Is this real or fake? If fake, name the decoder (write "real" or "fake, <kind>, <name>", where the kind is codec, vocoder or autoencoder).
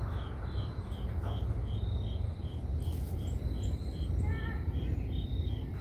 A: real